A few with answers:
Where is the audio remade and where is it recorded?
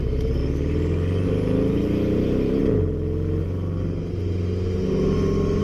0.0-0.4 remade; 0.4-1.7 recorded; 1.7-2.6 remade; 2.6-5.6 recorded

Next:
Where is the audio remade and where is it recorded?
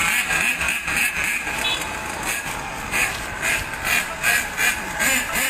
0.0-5.5 recorded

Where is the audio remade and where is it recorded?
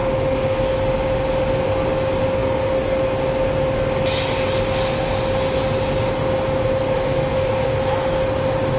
0.0-8.8 recorded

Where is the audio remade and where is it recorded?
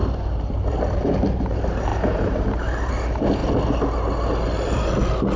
0.0-3.4 remade; 3.4-5.4 recorded